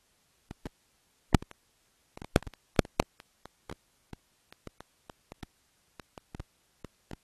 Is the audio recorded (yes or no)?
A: yes